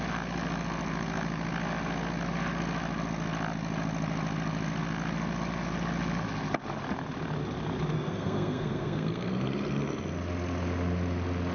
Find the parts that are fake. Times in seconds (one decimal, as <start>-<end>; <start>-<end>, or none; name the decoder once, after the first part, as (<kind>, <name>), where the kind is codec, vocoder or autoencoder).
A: 7.9-9.3 (codec, SNAC)